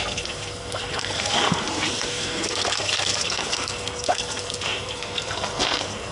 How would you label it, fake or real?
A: fake